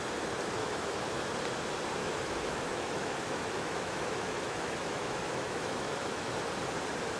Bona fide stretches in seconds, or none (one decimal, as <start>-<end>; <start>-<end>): 0.0-0.6; 1.3-2.0; 6.3-7.2